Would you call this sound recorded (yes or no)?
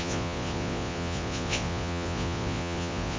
no